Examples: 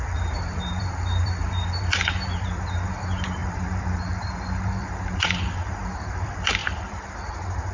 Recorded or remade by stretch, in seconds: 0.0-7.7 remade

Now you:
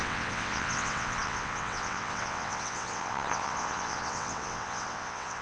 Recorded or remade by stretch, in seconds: 0.0-5.4 remade

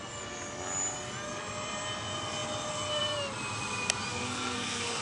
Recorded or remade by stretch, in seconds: 0.0-4.1 recorded; 4.1-5.0 remade

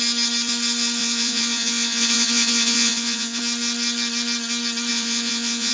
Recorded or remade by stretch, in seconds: 0.0-1.0 recorded; 1.0-3.4 remade; 3.4-4.9 recorded; 4.9-5.7 remade

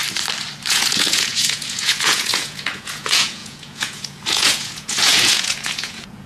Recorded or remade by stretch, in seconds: 0.0-0.7 recorded; 0.7-6.3 remade

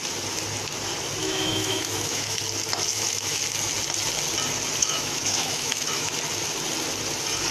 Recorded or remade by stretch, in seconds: 0.0-1.2 recorded; 1.2-2.4 remade; 2.4-2.9 recorded; 2.9-3.4 remade; 3.4-4.8 recorded; 4.8-6.1 remade; 6.1-7.5 recorded

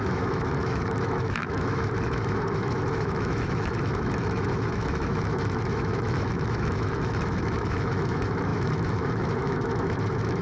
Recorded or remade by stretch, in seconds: 0.0-10.4 remade

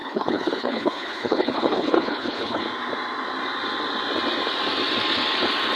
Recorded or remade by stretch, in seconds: 0.0-2.6 remade; 2.6-5.8 recorded